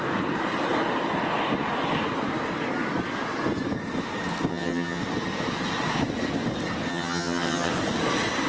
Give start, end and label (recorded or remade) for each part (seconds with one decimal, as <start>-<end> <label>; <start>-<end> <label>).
0.0-4.5 recorded; 4.5-5.0 remade; 5.0-6.9 recorded; 6.9-7.7 remade; 7.7-8.5 recorded